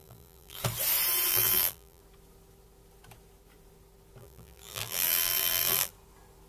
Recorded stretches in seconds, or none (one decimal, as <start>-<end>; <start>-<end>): 0.6-1.3; 2.0-4.2; 5.9-6.5